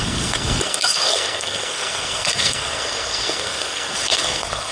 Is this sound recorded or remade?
remade